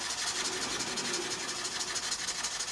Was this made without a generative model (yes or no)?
yes